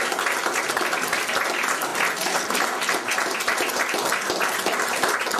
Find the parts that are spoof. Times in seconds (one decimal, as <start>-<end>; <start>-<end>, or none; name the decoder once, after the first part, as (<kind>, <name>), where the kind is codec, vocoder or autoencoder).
none